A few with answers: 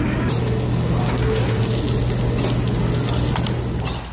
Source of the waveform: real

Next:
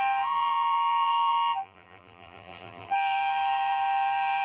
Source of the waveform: fake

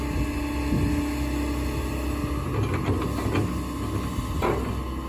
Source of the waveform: real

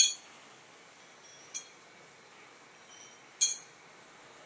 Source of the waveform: real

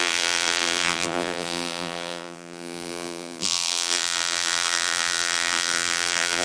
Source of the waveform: fake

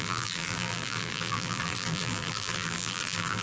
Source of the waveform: fake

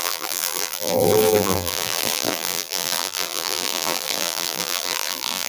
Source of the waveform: fake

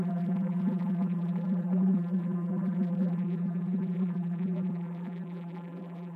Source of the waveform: fake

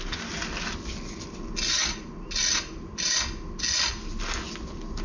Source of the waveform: real